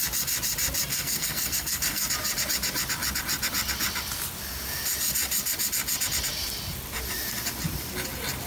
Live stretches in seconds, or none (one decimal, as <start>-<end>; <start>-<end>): 0.0-0.9; 2.1-8.5